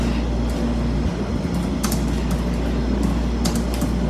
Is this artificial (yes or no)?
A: no